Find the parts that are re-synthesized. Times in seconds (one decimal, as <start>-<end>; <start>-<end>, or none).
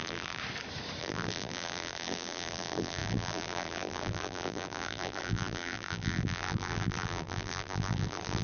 0.0-0.4; 1.0-8.4